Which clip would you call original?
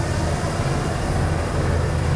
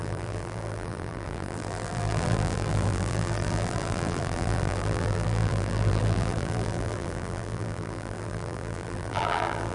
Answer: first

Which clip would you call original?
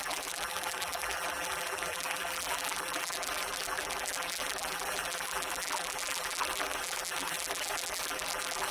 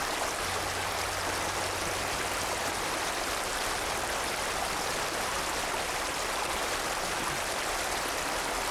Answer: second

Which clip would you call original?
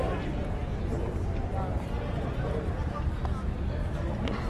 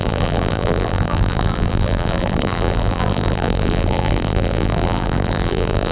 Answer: first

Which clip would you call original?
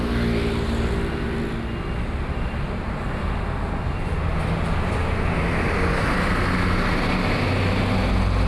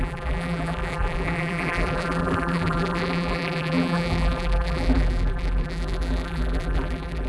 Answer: first